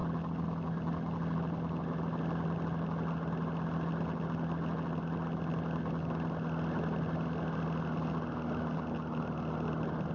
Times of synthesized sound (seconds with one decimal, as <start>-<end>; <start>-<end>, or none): none